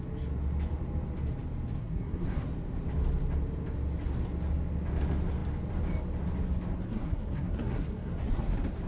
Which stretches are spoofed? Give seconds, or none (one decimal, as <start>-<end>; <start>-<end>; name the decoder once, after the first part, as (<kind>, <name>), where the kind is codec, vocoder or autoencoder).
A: 1.8-2.5 (codec, SNAC); 6.9-8.5